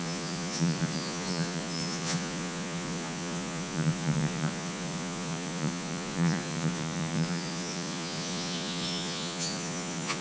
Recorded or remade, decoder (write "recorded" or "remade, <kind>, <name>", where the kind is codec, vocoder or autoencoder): remade, vocoder, Vocos